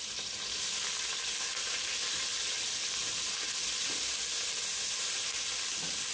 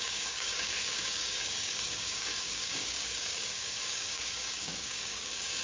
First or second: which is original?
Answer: first